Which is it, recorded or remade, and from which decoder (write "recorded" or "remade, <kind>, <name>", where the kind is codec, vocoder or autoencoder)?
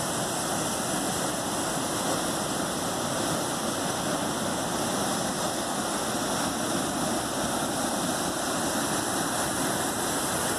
recorded